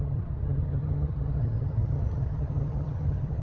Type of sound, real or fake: fake